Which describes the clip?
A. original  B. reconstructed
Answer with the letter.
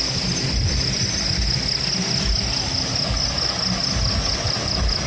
A